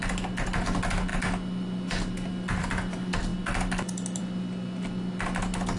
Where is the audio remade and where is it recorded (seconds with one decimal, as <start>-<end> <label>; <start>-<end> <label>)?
0.0-5.8 recorded